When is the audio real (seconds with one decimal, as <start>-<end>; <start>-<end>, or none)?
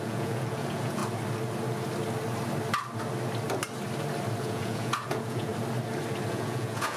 1.0-4.4; 5.5-6.3